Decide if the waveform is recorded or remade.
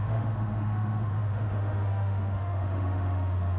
remade